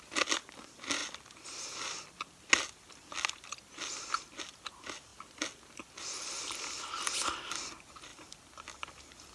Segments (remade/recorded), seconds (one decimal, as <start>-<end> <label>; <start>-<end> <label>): 0.0-9.3 recorded

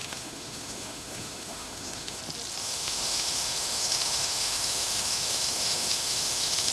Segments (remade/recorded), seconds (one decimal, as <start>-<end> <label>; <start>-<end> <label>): 0.0-2.2 remade; 2.2-2.6 recorded; 2.6-6.7 remade

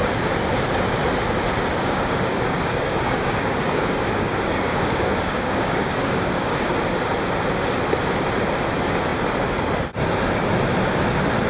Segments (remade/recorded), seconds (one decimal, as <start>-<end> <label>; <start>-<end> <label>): 0.0-1.8 recorded; 1.8-6.7 remade; 6.7-11.5 recorded

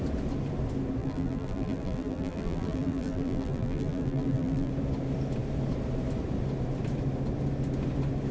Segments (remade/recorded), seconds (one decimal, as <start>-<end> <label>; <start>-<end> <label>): 0.0-1.0 recorded; 1.0-4.7 remade; 4.7-8.3 recorded

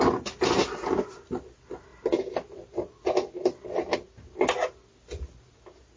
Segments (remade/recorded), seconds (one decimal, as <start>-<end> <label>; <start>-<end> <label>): 0.0-6.0 recorded

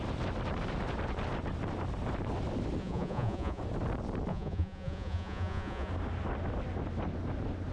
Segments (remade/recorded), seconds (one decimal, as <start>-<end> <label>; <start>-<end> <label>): 0.0-2.8 recorded; 2.8-3.6 remade; 3.6-4.3 recorded; 4.3-5.9 remade; 5.9-7.7 recorded

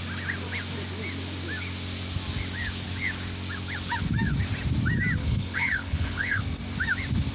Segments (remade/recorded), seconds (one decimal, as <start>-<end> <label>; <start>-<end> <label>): 0.0-5.2 recorded; 5.2-6.4 remade; 6.4-7.3 recorded

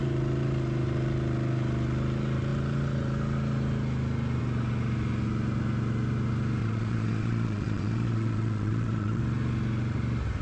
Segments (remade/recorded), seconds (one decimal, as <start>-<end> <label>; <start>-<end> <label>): 0.0-6.6 recorded; 6.6-9.2 remade; 9.2-10.4 recorded